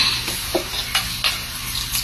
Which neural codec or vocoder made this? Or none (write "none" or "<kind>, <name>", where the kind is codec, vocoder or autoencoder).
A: none